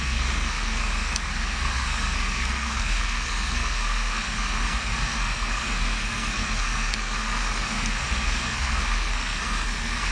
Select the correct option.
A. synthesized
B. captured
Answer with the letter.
A